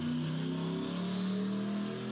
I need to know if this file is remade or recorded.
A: recorded